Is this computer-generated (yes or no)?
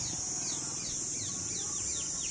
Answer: no